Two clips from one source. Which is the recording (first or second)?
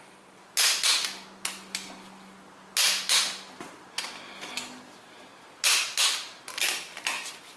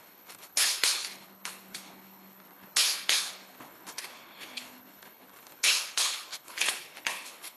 first